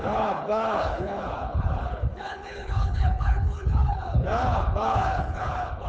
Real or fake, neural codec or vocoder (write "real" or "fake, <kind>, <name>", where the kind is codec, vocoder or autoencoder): fake, codec, HILCodec